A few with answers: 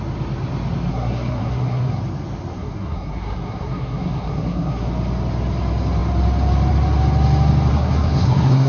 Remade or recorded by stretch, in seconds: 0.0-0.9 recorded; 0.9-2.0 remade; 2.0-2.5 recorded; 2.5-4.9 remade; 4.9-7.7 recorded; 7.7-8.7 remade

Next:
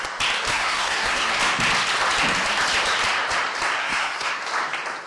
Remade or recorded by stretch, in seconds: 0.0-0.5 recorded; 0.5-1.4 remade; 1.4-3.8 recorded; 3.8-4.4 remade; 4.4-5.1 recorded

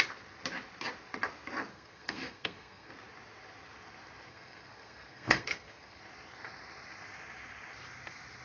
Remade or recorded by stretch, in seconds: 0.0-1.7 recorded; 1.7-2.9 remade; 2.9-4.3 recorded; 4.3-6.0 remade; 6.0-8.4 recorded

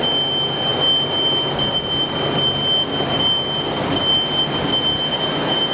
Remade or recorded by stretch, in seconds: 0.0-5.7 recorded

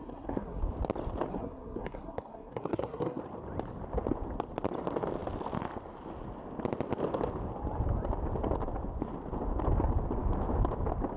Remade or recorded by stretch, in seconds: 0.0-0.6 remade; 0.6-1.3 recorded; 1.3-3.2 remade; 3.2-11.2 recorded